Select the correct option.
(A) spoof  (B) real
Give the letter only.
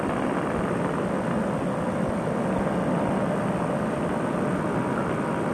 B